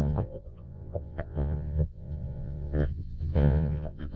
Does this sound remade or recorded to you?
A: remade